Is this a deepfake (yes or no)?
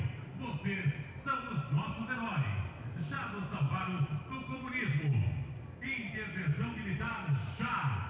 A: yes